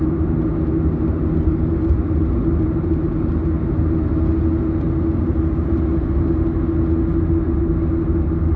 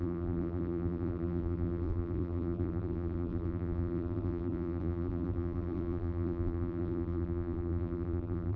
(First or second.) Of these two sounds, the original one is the first